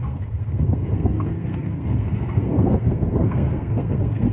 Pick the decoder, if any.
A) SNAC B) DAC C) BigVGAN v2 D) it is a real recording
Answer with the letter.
A